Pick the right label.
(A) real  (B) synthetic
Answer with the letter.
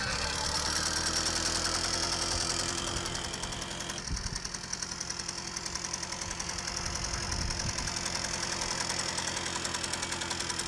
A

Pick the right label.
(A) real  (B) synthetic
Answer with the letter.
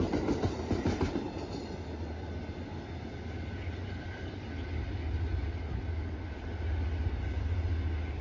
A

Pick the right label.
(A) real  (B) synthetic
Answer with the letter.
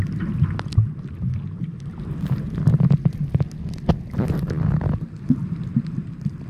A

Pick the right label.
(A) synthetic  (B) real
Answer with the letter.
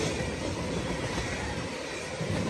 B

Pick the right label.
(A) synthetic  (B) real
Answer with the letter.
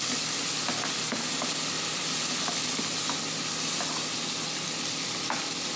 B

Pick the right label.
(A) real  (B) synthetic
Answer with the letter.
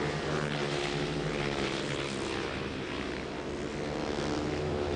A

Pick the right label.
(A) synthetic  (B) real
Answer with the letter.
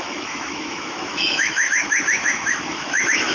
A